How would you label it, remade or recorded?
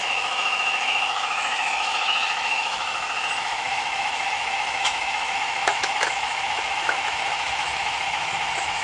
remade